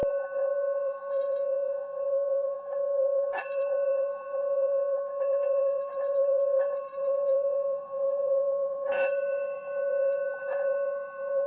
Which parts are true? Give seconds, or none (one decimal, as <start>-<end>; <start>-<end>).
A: none